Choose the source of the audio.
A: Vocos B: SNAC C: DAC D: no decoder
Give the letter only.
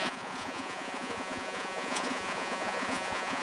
A